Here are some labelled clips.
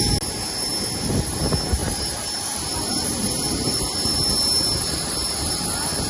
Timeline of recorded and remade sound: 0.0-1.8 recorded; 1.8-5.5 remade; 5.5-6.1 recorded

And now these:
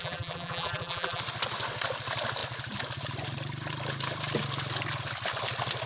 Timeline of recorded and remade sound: 0.0-1.2 remade; 1.2-5.9 recorded

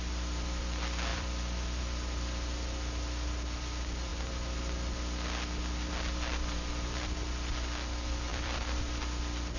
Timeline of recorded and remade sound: 0.0-1.1 recorded; 1.1-1.8 remade; 1.8-8.3 recorded; 8.3-9.0 remade; 9.0-9.6 recorded

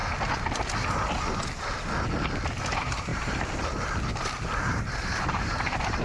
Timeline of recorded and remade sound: 0.0-2.6 recorded; 2.6-6.0 remade

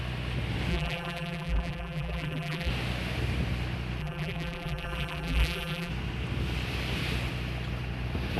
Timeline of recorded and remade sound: 0.0-0.7 recorded; 0.7-2.7 remade; 2.7-4.0 recorded; 4.0-5.9 remade; 5.9-8.4 recorded

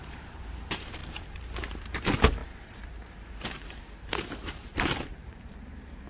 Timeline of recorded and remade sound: 0.0-6.1 remade